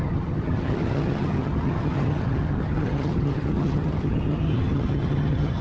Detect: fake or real fake